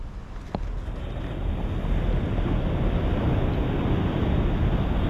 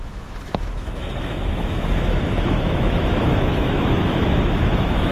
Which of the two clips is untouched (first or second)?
first